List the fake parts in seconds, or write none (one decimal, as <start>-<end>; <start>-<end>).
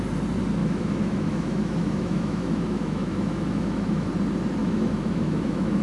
0.6-4.1; 4.6-5.8